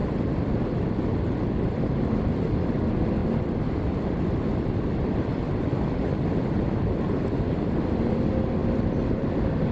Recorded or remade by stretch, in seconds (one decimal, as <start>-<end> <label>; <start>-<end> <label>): 0.0-8.6 recorded; 8.6-9.7 remade